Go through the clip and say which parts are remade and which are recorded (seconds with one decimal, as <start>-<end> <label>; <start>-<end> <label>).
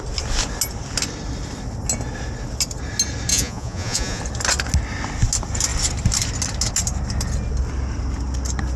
0.0-3.3 recorded; 3.3-4.2 remade; 4.2-8.8 recorded